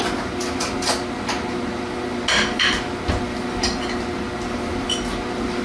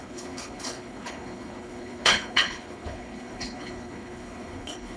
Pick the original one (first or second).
first